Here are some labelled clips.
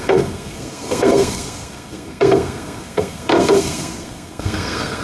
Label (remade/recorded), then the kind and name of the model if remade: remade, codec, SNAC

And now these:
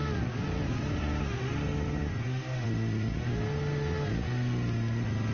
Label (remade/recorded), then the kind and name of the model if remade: recorded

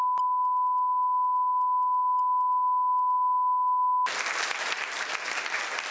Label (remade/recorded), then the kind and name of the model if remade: recorded